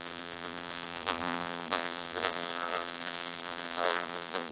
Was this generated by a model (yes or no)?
yes